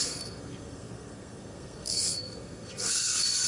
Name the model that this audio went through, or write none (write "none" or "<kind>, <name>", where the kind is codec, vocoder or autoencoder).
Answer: codec, SNAC